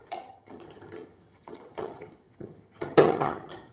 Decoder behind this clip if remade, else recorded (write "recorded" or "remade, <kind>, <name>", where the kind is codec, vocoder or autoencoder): remade, vocoder, HiFi-GAN